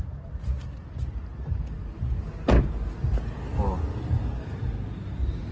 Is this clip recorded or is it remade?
recorded